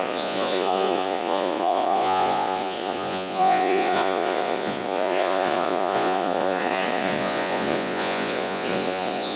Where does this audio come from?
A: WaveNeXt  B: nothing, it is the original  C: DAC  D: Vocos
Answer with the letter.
D